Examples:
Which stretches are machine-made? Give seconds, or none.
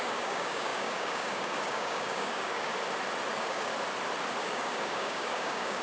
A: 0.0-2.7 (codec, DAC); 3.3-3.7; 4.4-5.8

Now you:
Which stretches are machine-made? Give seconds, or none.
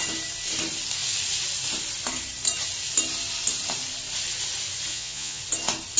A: 4.9-5.4 (vocoder, Vocos)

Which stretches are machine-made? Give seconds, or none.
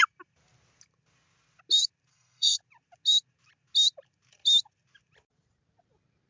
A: 2.1-2.6 (codec, SNAC)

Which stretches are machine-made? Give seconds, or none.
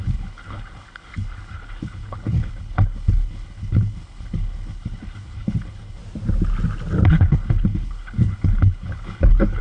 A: 0.0-6.0 (codec, HILCodec); 7.1-9.6